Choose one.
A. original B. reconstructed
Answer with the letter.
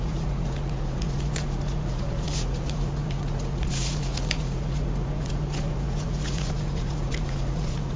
B